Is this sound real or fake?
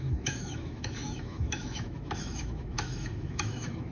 fake